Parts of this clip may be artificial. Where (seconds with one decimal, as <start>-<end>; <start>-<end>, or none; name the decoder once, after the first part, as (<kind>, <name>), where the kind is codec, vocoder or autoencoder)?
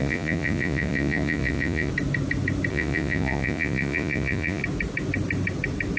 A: 0.0-1.9 (vocoder, Vocos); 2.7-4.6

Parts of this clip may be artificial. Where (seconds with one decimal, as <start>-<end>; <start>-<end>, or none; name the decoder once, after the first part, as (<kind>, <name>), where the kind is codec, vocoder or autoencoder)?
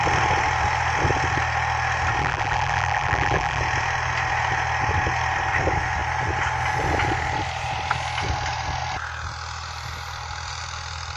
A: 2.2-3.6 (vocoder, BigVGAN v2)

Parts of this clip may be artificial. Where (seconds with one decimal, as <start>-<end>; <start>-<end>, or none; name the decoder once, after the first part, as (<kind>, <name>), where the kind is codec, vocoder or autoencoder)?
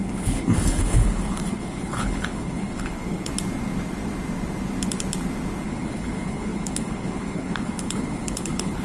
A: 0.0-3.3 (codec, HILCodec); 5.6-8.8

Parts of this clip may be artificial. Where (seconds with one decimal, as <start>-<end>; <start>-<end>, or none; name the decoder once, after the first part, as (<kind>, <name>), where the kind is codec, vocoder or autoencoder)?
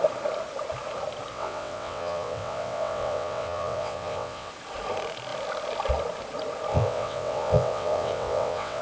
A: 1.3-4.5 (vocoder, WaveNeXt); 6.7-8.8